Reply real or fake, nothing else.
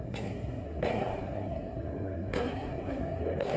fake